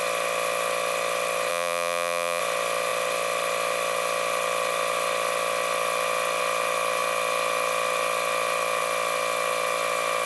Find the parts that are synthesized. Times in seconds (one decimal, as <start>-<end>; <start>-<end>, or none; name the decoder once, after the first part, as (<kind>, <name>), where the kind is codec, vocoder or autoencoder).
1.5-2.4 (vocoder, Vocos)